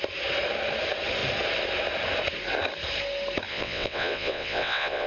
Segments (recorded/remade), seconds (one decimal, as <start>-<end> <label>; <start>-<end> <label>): 0.0-3.5 recorded; 3.5-5.1 remade